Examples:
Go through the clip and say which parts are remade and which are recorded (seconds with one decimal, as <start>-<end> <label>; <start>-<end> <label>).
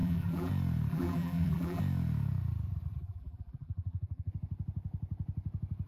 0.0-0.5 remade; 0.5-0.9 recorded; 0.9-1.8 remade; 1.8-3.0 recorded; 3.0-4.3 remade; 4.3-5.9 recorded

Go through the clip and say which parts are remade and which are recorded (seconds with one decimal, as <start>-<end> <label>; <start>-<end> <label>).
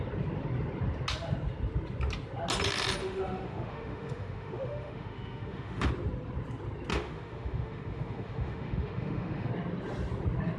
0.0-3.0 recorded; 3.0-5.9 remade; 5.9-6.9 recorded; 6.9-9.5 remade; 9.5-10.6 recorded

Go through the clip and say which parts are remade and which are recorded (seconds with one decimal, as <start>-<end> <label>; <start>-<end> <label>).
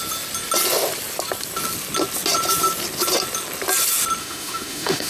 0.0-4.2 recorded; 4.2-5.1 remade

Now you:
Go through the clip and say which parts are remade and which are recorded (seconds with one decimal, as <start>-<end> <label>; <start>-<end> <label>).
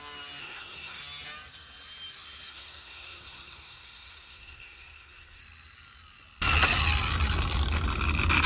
0.0-0.4 recorded; 0.4-1.0 remade; 1.0-2.5 recorded; 2.5-5.4 remade; 5.4-8.5 recorded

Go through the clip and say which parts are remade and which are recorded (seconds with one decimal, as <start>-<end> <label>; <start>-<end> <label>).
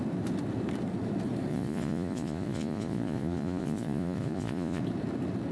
0.0-1.5 recorded; 1.5-4.8 remade; 4.8-5.5 recorded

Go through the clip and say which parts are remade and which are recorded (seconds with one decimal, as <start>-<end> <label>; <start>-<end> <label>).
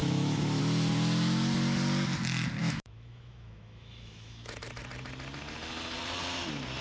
0.0-0.6 remade; 0.6-2.6 recorded; 2.6-4.6 remade; 4.6-6.8 recorded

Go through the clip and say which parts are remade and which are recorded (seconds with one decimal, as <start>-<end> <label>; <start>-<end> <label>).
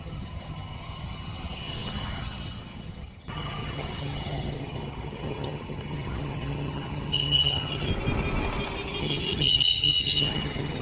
0.0-7.9 remade; 7.9-9.0 recorded; 9.0-10.8 remade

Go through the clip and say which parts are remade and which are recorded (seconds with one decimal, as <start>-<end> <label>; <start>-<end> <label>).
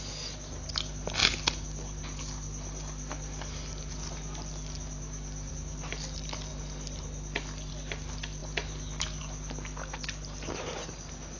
0.0-11.4 recorded